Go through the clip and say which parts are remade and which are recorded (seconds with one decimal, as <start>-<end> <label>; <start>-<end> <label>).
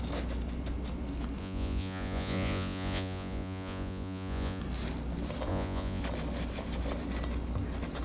0.0-1.4 recorded; 1.4-4.6 remade; 4.6-5.5 recorded; 5.5-6.0 remade; 6.0-8.0 recorded